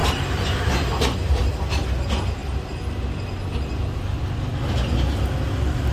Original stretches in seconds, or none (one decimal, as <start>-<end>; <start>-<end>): 1.5-5.9